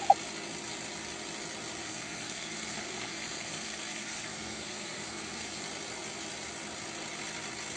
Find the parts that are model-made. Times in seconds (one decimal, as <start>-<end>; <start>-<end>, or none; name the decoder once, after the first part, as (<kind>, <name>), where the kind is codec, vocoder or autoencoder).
1.8-5.6 (codec, SNAC)